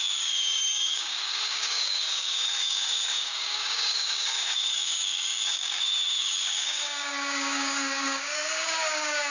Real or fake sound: fake